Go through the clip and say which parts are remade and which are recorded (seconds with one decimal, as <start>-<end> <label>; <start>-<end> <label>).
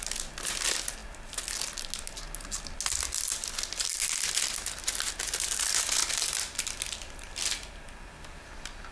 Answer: 0.0-8.9 recorded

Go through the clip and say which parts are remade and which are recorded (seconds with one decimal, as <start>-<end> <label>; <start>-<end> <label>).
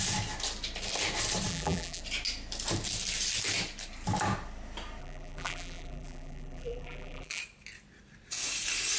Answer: 0.0-1.5 recorded; 1.5-2.0 remade; 2.0-5.0 recorded; 5.0-7.4 remade; 7.4-9.0 recorded